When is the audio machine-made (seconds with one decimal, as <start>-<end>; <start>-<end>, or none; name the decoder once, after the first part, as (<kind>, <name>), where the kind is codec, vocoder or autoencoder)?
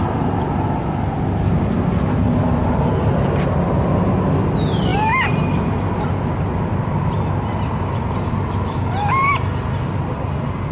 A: none